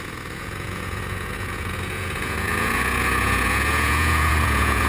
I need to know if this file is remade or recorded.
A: remade